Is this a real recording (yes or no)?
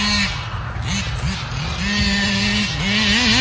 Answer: yes